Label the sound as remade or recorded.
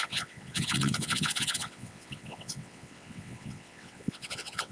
remade